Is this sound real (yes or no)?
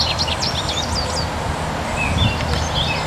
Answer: yes